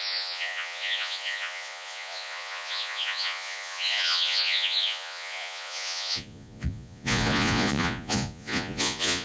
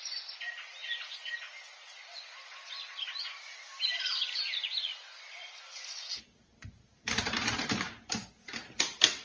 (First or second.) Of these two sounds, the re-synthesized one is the first